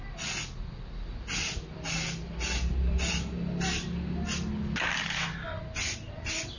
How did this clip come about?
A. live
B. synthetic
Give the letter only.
A